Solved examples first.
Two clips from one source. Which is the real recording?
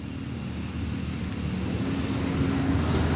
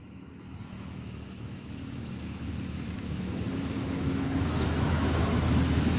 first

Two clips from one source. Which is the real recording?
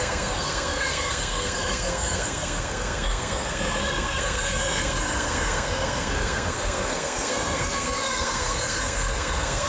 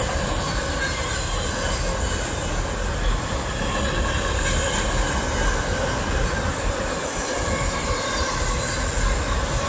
second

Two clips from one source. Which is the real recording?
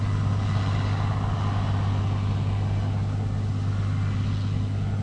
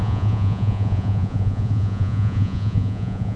first